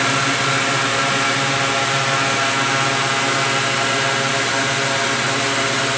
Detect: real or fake real